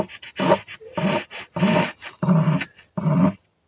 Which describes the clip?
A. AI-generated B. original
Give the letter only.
B